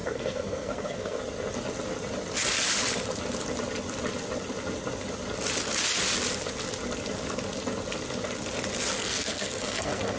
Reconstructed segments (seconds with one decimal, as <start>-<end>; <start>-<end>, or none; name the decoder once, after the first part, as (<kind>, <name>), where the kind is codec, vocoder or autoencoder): 0.0-1.2 (codec, SNAC); 9.0-10.2